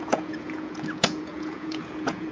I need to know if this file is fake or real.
fake